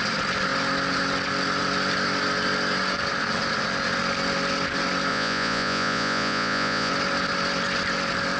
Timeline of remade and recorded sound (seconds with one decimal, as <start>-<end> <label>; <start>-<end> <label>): 0.0-5.1 recorded; 5.1-6.9 remade; 6.9-8.4 recorded